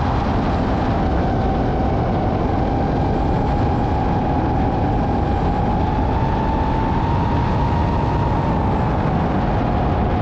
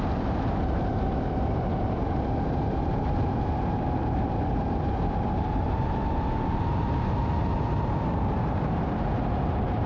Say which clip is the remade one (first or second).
second